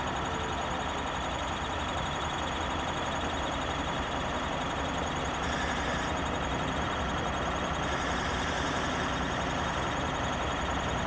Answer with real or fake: real